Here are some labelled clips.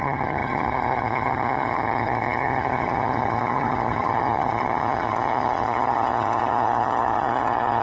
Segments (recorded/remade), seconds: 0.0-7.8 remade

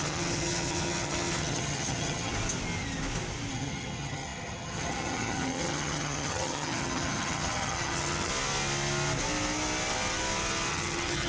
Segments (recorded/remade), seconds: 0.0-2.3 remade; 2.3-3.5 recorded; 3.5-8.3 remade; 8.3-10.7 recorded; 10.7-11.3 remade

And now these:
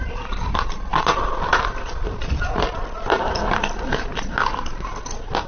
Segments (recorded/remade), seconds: 0.0-5.5 recorded

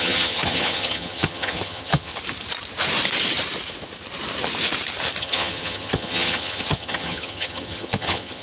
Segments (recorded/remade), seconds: 0.0-2.1 remade; 2.1-5.2 recorded; 5.2-8.4 remade